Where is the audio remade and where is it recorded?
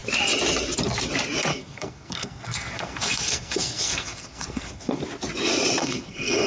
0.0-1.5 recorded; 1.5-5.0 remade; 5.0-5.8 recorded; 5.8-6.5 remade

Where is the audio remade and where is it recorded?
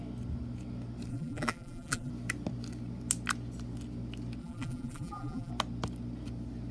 0.0-1.1 recorded; 1.1-2.1 remade; 2.1-4.4 recorded; 4.4-5.5 remade; 5.5-6.7 recorded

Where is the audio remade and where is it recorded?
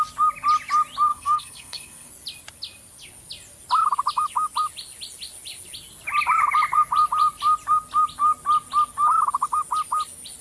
0.0-1.1 recorded; 1.1-2.1 remade; 2.1-10.4 recorded